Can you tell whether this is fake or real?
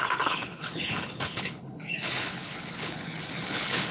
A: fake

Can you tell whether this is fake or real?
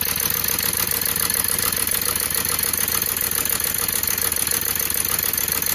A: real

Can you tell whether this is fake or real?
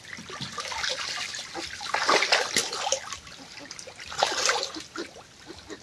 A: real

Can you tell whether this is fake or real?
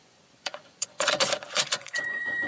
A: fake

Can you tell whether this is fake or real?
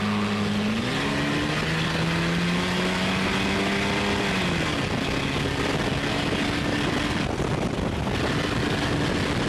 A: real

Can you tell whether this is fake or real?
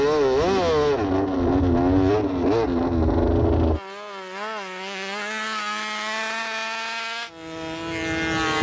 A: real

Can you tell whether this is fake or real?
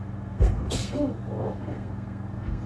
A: fake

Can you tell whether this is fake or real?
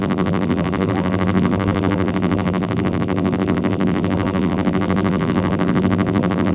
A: fake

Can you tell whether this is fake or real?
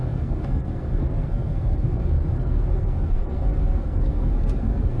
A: fake